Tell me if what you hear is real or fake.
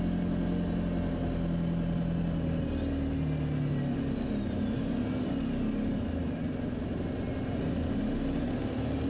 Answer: real